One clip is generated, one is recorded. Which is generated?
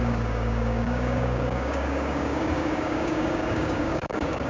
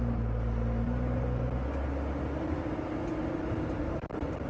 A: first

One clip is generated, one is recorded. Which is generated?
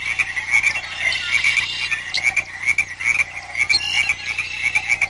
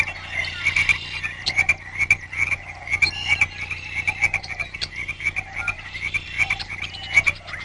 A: second